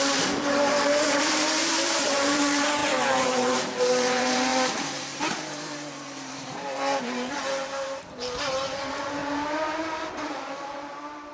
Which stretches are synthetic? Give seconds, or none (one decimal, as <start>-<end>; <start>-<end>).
0.0-9.2; 10.3-11.3